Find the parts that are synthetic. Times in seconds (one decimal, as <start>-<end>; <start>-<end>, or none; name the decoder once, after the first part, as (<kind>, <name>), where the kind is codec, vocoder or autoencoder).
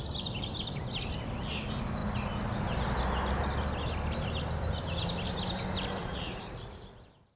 6.0-7.0 (vocoder, Vocos)